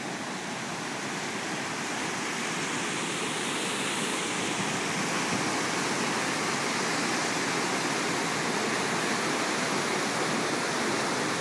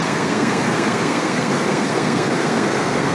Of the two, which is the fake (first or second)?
second